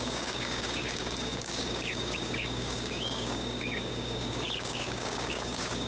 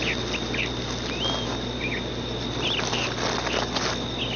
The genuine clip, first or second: second